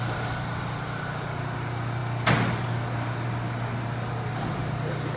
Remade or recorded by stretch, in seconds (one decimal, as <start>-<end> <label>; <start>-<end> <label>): 0.0-5.2 recorded